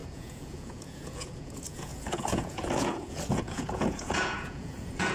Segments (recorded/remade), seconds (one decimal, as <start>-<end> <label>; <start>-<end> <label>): 0.0-5.1 remade